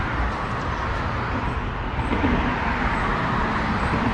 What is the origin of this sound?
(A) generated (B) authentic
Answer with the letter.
B